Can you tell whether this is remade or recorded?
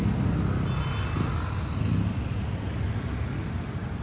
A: recorded